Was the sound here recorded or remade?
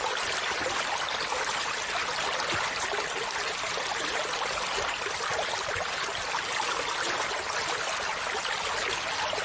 recorded